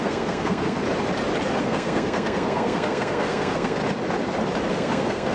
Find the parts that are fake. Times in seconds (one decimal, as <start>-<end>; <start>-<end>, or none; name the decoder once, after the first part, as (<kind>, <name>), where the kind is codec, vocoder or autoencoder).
0.0-0.8 (codec, SNAC); 1.6-3.8; 4.7-5.3